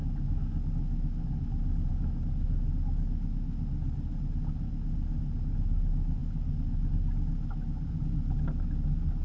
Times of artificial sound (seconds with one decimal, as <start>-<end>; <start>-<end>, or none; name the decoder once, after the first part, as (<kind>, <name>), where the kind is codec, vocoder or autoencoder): none